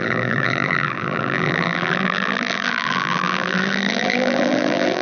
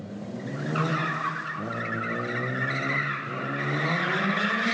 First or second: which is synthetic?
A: first